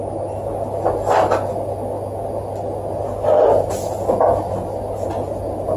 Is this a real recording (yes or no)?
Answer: yes